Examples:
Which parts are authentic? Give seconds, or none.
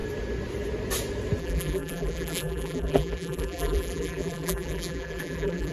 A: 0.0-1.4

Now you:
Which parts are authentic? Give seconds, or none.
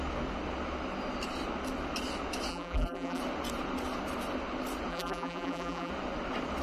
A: 0.0-2.5; 3.2-4.9; 5.9-6.6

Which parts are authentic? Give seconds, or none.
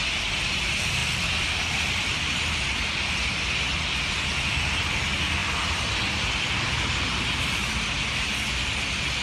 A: 0.0-5.4; 7.0-9.2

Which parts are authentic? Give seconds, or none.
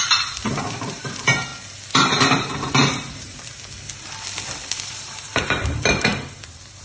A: 1.5-2.4; 3.5-4.9; 6.1-6.8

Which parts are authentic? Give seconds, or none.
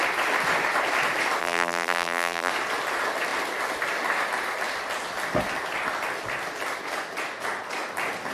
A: 0.0-1.4; 2.5-8.3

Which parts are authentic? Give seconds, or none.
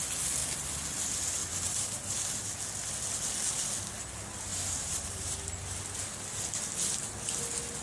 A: 0.0-1.4; 2.3-4.5; 5.3-7.8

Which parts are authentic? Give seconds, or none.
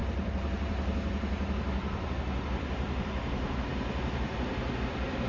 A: 2.1-3.7